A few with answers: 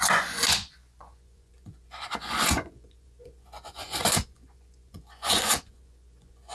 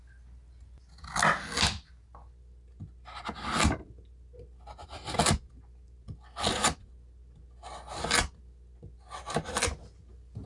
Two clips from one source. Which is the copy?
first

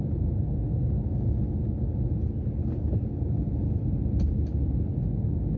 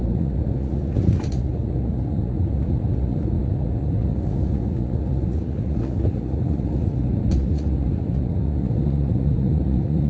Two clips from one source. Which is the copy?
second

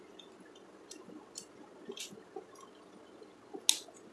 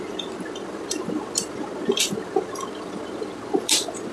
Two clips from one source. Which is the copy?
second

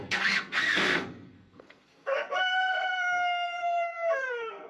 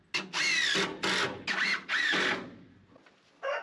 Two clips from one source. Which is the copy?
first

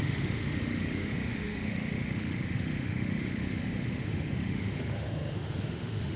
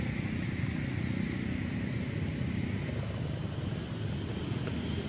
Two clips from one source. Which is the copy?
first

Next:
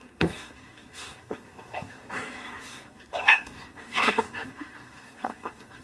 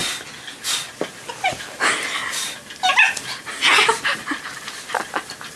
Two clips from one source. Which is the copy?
first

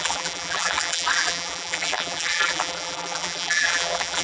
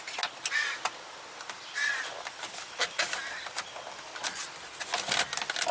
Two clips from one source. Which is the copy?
first